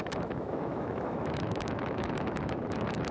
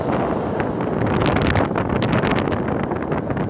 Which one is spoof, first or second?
first